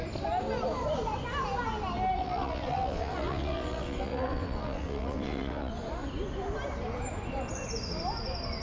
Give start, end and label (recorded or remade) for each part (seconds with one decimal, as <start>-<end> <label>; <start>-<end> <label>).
0.0-2.2 recorded; 2.2-5.7 remade; 5.7-8.6 recorded